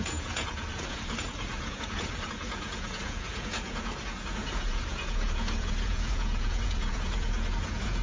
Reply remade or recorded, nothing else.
remade